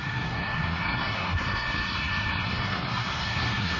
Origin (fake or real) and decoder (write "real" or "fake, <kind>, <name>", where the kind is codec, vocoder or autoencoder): fake, codec, SNAC